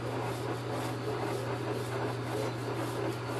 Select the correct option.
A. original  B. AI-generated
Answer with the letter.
A